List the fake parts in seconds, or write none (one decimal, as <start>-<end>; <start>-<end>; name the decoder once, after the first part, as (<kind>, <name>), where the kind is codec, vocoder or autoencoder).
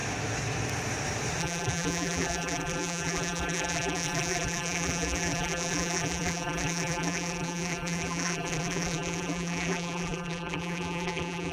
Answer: 1.4-11.5 (vocoder, BigVGAN v2)